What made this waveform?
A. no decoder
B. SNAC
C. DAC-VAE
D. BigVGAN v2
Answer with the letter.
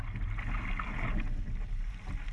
A